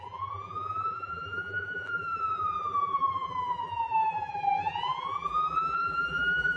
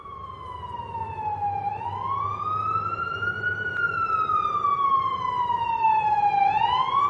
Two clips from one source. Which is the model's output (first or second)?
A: first